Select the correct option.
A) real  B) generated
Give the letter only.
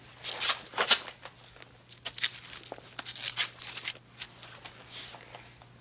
A